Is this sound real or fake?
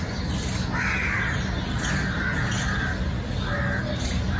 real